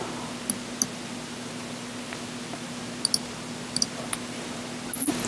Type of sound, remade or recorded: recorded